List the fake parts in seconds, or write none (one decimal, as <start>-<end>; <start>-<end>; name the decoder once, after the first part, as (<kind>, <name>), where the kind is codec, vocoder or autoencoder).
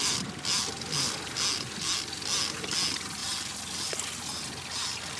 none